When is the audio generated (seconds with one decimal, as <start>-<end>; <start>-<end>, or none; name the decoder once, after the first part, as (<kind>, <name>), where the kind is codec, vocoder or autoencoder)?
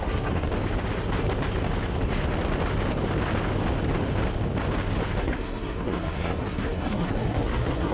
0.0-0.5 (codec, SNAC); 5.2-7.9